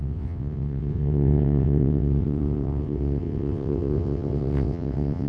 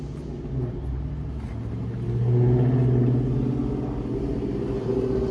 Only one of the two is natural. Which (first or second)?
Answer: second